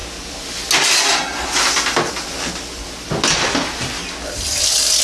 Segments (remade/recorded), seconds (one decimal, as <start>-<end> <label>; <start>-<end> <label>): 0.0-5.0 recorded